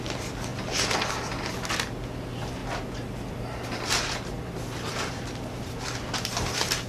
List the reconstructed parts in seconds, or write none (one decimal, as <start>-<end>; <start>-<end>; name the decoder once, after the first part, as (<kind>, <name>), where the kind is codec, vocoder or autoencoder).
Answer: none